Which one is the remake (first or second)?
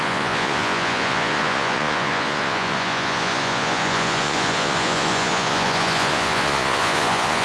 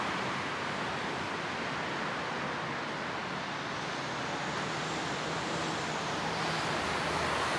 first